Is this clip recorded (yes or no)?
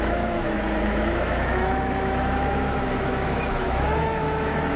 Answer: no